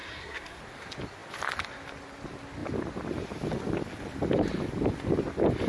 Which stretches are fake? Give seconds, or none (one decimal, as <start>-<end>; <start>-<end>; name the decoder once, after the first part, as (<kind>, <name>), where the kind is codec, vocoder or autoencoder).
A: 0.0-0.6 (codec, SNAC)